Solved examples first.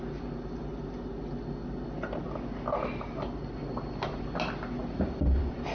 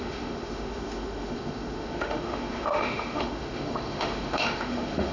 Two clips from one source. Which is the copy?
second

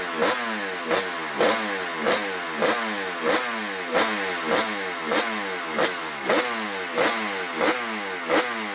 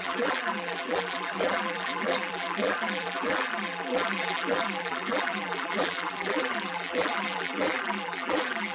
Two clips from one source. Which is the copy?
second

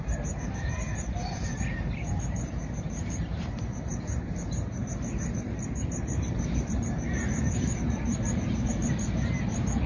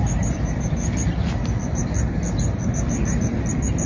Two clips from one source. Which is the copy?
first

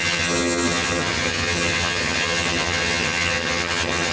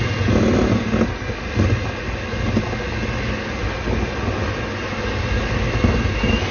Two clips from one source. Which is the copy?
first